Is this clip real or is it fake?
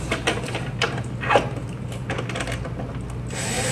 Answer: real